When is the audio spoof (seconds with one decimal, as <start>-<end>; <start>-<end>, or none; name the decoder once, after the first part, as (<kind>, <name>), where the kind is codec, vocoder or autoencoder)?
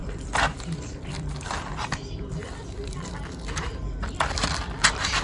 0.0-3.1 (vocoder, BigVGAN v2)